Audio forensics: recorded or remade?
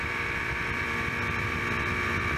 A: remade